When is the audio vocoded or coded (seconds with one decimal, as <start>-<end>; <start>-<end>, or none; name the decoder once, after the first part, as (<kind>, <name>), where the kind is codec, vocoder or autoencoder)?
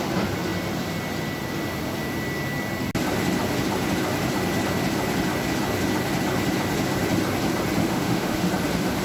7.8-8.5 (autoencoder, DAC-VAE)